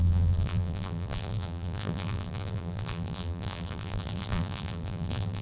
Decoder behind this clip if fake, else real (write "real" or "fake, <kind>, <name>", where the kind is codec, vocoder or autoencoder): fake, vocoder, BigVGAN v2